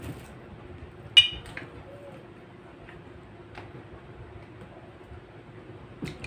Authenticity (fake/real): real